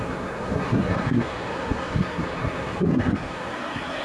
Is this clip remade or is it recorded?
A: remade